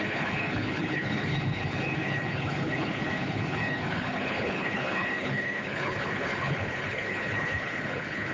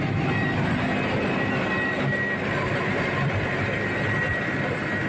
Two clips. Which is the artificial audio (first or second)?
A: first